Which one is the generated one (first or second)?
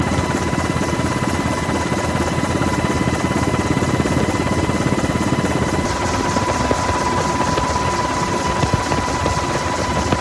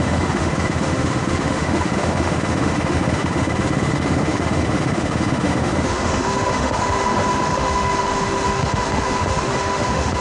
second